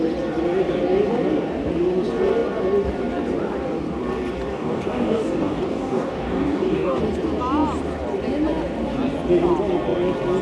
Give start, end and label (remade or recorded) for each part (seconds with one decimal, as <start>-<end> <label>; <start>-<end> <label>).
0.0-4.5 recorded; 4.5-7.0 remade; 7.0-10.4 recorded

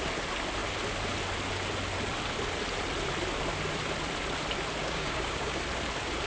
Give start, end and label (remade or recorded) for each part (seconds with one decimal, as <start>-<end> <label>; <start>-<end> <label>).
0.0-4.8 recorded; 4.8-5.6 remade; 5.6-6.3 recorded

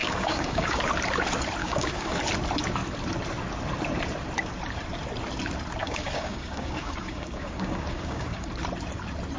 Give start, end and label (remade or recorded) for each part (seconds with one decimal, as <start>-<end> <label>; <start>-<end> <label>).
0.0-0.9 remade; 0.9-1.6 recorded; 1.6-2.2 remade; 2.2-5.8 recorded; 5.8-8.5 remade; 8.5-9.4 recorded

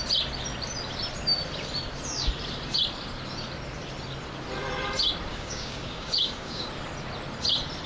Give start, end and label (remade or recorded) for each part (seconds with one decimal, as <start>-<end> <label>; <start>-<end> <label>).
0.0-5.3 recorded; 5.3-6.7 remade; 6.7-7.9 recorded

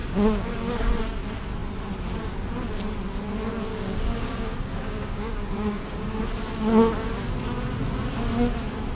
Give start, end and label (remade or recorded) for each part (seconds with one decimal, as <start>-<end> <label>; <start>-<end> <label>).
0.0-0.9 remade; 0.9-3.7 recorded; 3.7-6.2 remade; 6.2-8.9 recorded

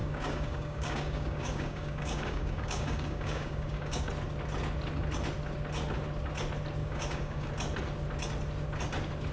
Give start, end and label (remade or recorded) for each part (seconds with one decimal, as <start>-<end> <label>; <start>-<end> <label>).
0.0-4.1 remade; 4.1-6.8 recorded; 6.8-7.5 remade; 7.5-9.3 recorded